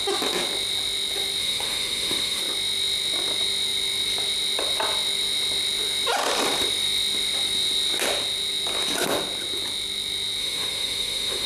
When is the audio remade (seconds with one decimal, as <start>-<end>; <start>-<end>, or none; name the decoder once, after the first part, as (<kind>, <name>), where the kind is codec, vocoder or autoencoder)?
1.4-2.4 (autoencoder, DAC-VAE); 10.4-11.5